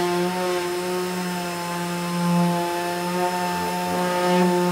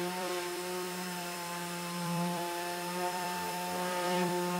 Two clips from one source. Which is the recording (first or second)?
first